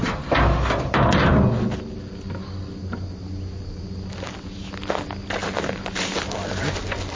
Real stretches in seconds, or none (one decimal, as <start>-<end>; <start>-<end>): 0.0-7.2